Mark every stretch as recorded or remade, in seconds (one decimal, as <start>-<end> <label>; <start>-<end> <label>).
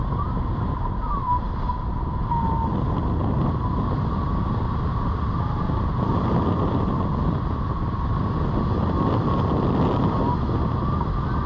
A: 0.0-11.5 recorded